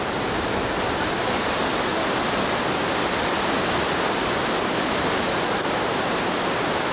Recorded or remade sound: recorded